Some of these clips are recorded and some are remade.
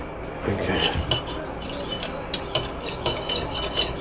recorded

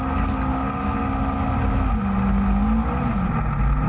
recorded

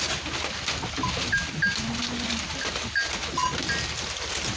recorded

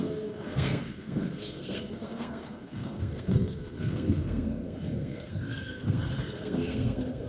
remade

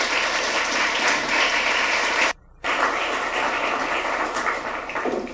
remade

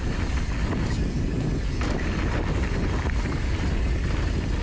recorded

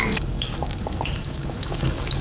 remade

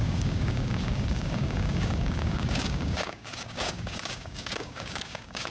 remade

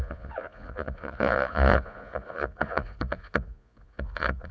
remade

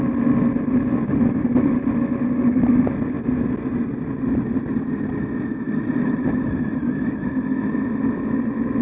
recorded